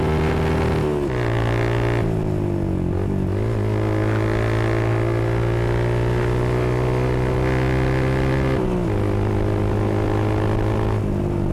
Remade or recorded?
recorded